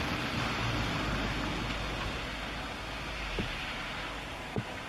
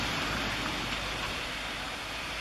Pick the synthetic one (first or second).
second